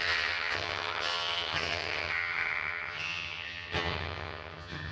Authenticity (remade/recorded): remade